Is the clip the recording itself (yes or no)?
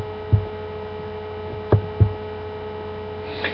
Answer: yes